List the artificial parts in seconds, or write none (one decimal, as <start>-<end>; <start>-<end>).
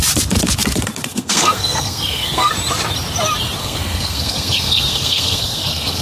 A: 1.1-2.5; 3.6-6.0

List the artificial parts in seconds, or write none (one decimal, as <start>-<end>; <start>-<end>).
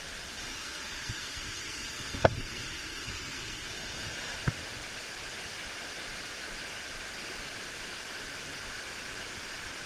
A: 0.5-3.7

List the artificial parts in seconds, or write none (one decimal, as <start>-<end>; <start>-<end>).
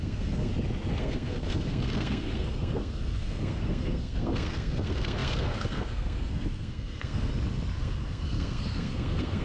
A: 0.0-0.5; 1.0-7.3; 7.8-9.4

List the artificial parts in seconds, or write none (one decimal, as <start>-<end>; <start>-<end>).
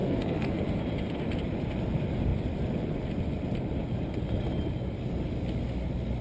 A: 0.0-0.6